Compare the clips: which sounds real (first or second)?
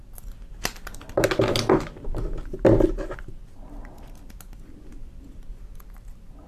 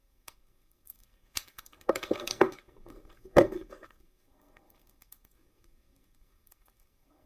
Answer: first